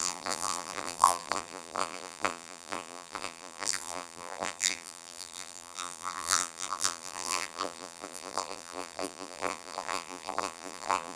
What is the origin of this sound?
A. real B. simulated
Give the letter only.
B